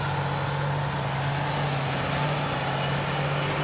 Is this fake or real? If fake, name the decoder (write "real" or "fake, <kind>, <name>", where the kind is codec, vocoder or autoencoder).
real